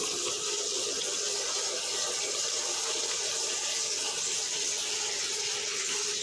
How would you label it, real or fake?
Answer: real